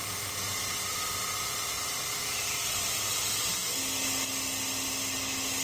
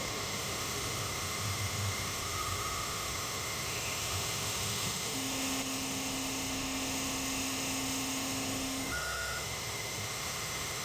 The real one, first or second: first